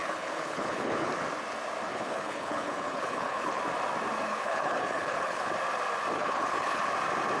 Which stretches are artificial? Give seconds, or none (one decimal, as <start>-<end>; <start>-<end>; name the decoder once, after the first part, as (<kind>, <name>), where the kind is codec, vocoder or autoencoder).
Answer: 0.0-1.1 (codec, HILCodec); 1.9-3.6; 4.3-5.5; 6.2-6.8